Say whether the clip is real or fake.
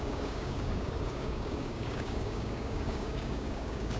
fake